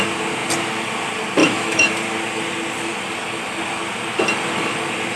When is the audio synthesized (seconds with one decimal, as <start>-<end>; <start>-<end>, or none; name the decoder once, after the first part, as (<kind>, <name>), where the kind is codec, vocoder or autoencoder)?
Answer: 1.4-1.9 (autoencoder, DAC-VAE)